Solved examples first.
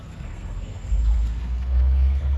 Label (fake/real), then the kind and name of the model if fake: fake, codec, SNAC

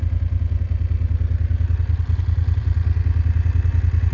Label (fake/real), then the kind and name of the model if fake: real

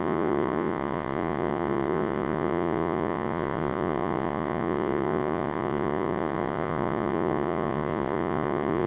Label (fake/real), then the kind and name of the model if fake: fake, vocoder, Vocos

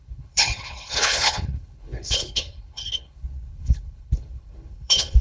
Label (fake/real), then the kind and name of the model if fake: fake, codec, HILCodec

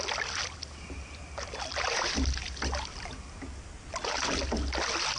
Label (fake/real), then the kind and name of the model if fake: real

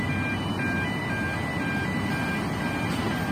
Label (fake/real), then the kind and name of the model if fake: real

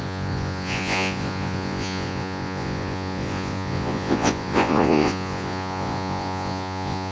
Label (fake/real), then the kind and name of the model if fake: fake, vocoder, Vocos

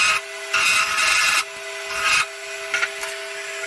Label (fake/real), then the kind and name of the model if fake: real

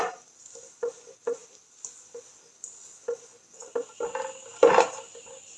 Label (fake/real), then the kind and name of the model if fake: real